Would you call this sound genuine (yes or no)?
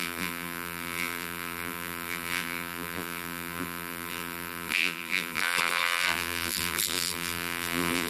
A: no